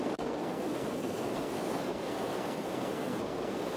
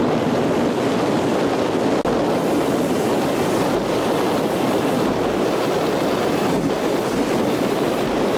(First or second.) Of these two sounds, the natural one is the second